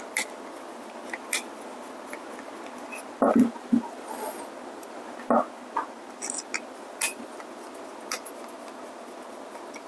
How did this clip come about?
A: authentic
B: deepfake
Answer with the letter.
A